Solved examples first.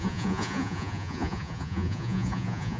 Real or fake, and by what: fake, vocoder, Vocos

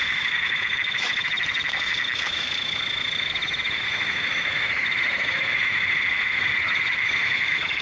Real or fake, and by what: fake, autoencoder, DAC-VAE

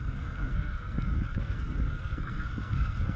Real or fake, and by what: fake, codec, SNAC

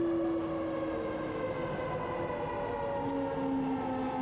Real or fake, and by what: real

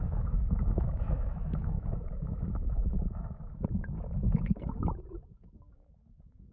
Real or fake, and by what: fake, autoencoder, DAC-VAE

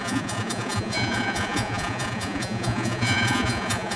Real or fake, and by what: fake, vocoder, Vocos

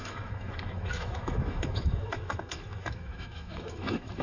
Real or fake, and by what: fake, autoencoder, DAC-VAE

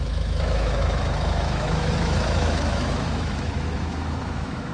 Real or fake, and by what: fake, autoencoder, DAC-VAE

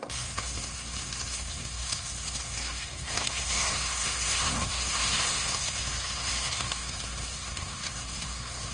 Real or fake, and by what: fake, codec, SNAC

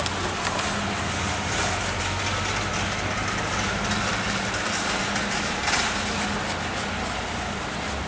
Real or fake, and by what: real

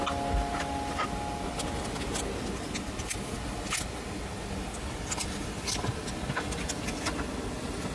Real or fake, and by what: real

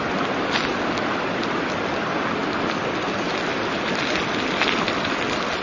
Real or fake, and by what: real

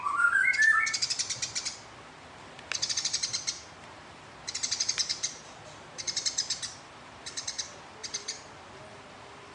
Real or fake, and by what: real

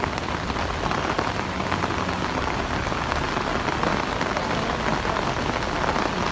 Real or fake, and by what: real